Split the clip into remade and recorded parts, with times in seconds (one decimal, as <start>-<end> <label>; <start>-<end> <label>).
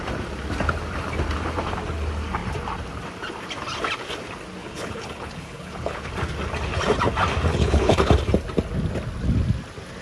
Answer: 0.0-4.6 recorded; 4.6-6.1 remade; 6.1-7.5 recorded; 7.5-8.1 remade; 8.1-10.0 recorded